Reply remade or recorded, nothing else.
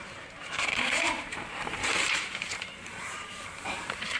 remade